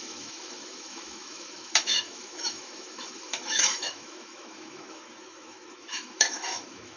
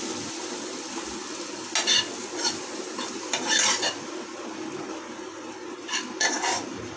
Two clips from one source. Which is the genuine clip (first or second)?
second